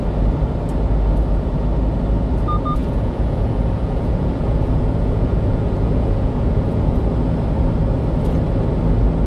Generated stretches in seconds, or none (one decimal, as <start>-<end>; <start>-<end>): 2.8-7.0